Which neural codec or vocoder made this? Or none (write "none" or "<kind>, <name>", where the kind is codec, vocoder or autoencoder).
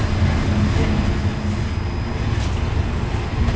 none